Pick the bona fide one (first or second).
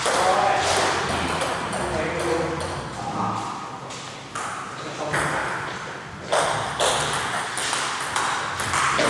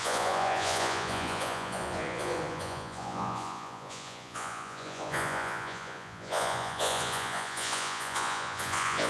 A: first